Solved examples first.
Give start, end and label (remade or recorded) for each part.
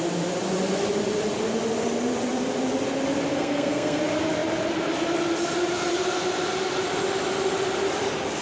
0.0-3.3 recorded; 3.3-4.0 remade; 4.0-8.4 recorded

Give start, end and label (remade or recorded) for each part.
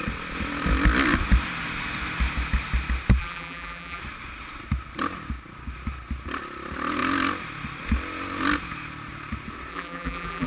0.0-3.2 recorded; 3.2-4.0 remade; 4.0-9.7 recorded; 9.7-10.5 remade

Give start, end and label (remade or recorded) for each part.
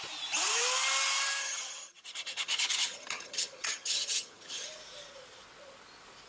0.0-1.4 recorded; 1.4-4.7 remade; 4.7-6.3 recorded